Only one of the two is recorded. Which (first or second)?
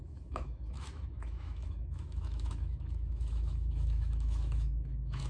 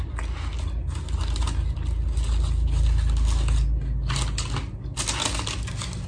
second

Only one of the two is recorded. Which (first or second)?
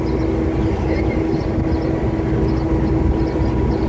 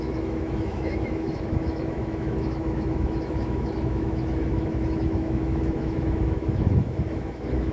first